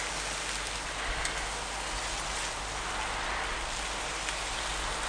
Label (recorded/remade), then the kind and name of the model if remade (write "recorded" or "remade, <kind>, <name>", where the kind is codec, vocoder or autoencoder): recorded